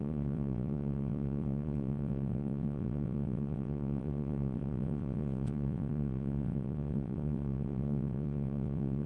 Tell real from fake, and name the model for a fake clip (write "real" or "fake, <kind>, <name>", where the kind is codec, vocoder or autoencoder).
fake, vocoder, WaveNeXt